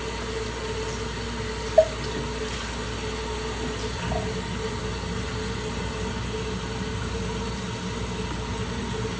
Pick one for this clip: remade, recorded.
recorded